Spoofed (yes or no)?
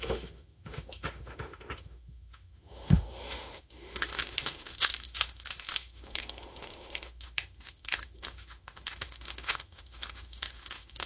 yes